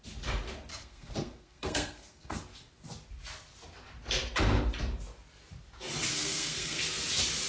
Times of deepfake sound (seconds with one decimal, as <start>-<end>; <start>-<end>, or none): 0.7-2.4; 6.1-6.8